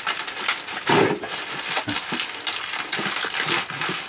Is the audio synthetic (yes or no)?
no